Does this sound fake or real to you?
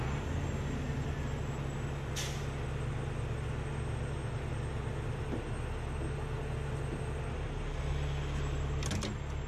real